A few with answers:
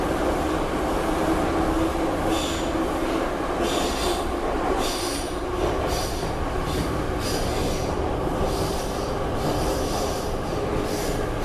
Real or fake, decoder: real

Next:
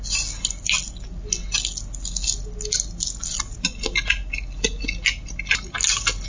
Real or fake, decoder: real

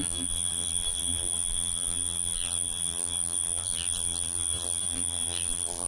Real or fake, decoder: fake, vocoder, BigVGAN v2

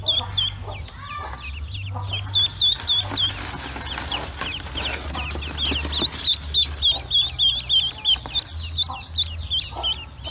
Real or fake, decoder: real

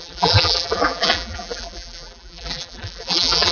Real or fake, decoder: fake, vocoder, BigVGAN v2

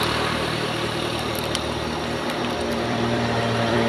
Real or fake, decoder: fake, vocoder, BigVGAN v2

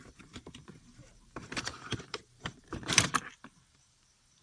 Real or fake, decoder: fake, vocoder, BigVGAN v2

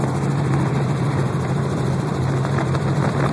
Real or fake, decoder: fake, vocoder, BigVGAN v2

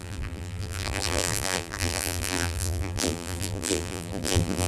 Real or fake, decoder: fake, vocoder, BigVGAN v2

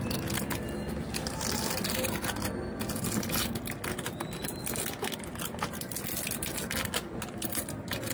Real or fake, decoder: real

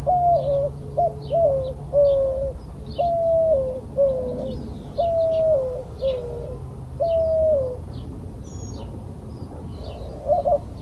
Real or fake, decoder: real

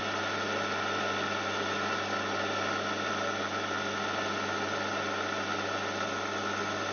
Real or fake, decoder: real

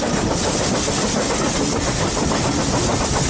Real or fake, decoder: real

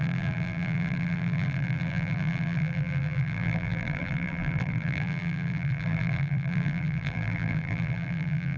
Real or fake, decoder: fake, vocoder, BigVGAN v2